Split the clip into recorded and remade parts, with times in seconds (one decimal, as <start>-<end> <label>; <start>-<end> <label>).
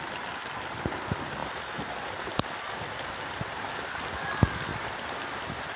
0.0-5.8 recorded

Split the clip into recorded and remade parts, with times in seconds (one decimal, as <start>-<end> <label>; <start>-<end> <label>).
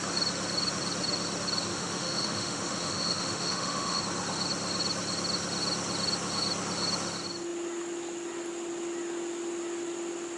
0.0-1.7 recorded; 1.7-4.0 remade; 4.0-10.4 recorded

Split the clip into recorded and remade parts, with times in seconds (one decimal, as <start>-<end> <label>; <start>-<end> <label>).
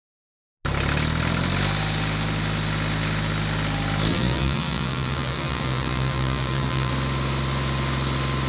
0.0-4.1 recorded; 4.1-6.9 remade; 6.9-8.5 recorded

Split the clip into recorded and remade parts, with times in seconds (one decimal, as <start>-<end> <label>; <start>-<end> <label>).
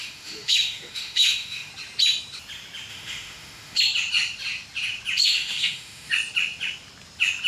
0.0-1.7 remade; 1.7-2.9 recorded; 2.9-3.8 remade; 3.8-5.2 recorded; 5.2-6.1 remade; 6.1-7.5 recorded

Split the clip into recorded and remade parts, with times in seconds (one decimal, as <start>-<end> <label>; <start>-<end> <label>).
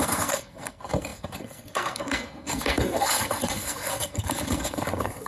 0.0-5.3 remade